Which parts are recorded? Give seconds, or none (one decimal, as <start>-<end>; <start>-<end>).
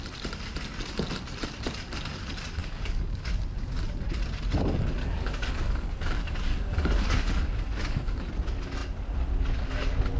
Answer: 0.0-2.6; 3.3-5.0; 8.2-10.2